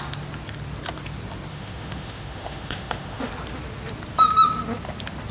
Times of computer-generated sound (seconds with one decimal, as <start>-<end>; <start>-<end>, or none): 1.5-3.3

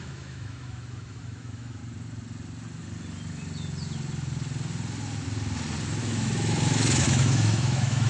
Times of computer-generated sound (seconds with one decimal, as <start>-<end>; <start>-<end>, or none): 0.0-1.8; 6.0-8.1

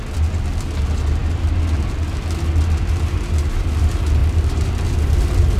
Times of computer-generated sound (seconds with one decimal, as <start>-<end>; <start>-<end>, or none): none

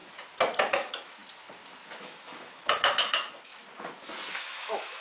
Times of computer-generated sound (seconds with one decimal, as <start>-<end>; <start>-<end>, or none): 0.7-1.2; 2.0-3.5; 4.3-5.0

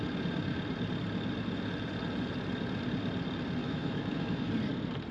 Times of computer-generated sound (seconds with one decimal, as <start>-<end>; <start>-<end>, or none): 3.6-4.5

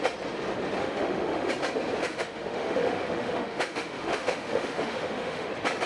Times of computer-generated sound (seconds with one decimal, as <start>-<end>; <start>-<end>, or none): 0.8-1.5; 2.0-5.5

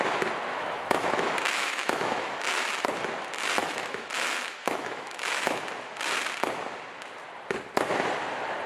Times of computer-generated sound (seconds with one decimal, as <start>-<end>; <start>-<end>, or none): 0.5-2.8; 3.6-5.6

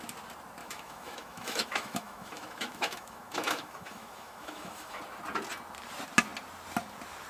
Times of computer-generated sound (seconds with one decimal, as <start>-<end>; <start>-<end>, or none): 0.6-5.0